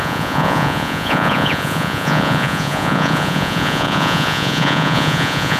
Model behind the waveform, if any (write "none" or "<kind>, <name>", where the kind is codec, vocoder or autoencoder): vocoder, Vocos